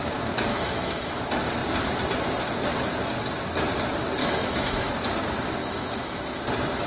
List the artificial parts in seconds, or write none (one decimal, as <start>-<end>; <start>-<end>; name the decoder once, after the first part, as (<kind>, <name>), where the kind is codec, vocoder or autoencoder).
0.5-1.2 (autoencoder, DAC-VAE); 4.2-4.9; 5.6-6.4